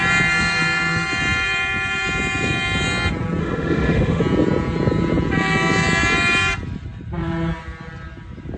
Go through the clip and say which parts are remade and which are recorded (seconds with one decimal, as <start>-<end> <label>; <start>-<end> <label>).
0.0-3.4 recorded; 3.4-4.2 remade; 4.2-8.6 recorded